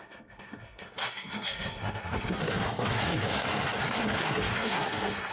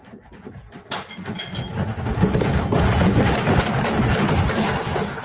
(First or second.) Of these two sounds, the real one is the second